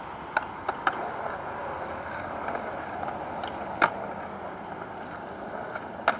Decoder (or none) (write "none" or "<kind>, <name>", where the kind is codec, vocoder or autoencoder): none